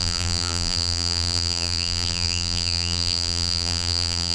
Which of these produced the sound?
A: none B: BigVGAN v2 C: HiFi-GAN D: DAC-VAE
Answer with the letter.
B